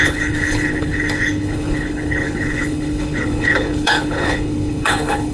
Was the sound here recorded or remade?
remade